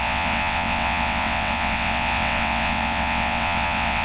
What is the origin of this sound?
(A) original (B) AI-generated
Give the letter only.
B